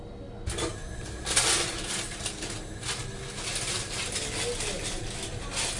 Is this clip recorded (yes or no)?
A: yes